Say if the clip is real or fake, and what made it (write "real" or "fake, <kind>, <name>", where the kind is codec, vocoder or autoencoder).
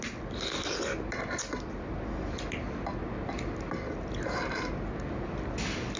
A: real